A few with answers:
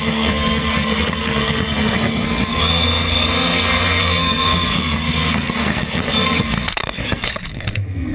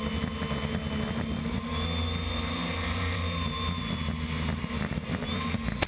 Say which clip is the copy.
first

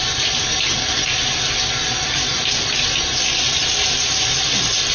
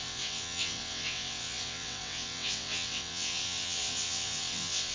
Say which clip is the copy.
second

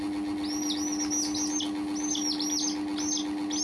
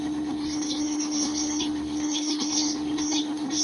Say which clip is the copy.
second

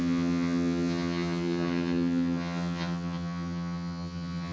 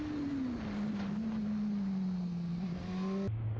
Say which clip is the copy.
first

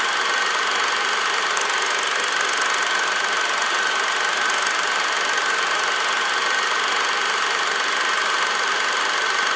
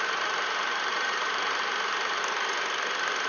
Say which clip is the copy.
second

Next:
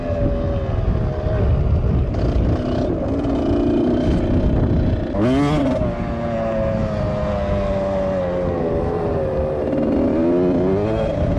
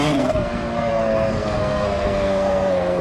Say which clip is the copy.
second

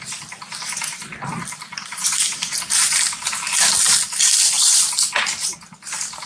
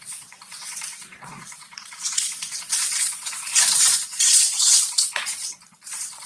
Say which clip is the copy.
second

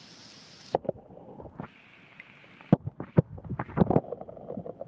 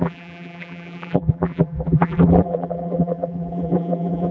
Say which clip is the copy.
second